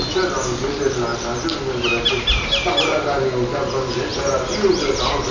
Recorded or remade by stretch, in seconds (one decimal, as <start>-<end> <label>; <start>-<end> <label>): 0.0-5.3 recorded